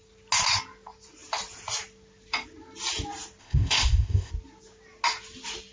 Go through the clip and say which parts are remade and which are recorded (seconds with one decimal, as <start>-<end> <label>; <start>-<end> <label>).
0.0-3.4 recorded; 3.4-4.3 remade; 4.3-5.7 recorded